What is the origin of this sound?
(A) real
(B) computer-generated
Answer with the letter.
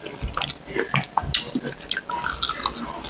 A